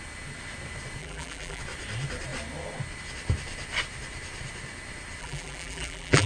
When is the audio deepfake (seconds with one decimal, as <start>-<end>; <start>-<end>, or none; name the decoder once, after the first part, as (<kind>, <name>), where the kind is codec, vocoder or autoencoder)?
1.0-1.6 (vocoder, BigVGAN v2); 5.2-6.3